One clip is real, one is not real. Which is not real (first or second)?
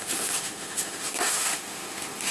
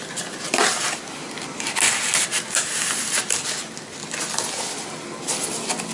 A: first